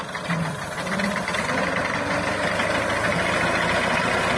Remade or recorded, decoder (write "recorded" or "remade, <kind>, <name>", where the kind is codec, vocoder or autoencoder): recorded